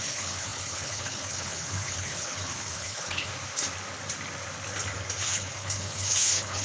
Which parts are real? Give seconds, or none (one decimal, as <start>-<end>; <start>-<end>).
3.3-5.2